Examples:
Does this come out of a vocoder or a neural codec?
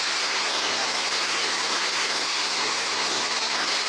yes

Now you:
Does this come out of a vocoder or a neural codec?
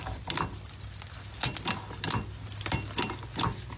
no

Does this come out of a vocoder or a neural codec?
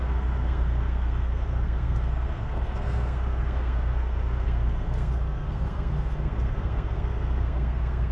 yes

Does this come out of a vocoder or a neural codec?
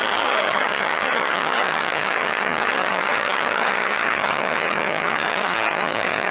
yes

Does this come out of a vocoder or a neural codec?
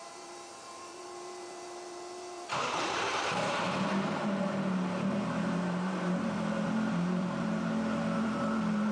yes